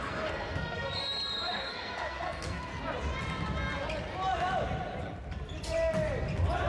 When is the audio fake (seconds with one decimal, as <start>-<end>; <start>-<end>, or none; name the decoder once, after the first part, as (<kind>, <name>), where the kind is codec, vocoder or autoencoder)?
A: 0.0-1.0 (codec, SNAC); 1.6-2.7